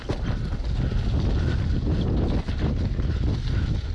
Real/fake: real